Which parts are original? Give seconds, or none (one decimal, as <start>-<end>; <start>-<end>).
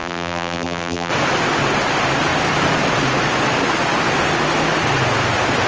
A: 1.1-5.7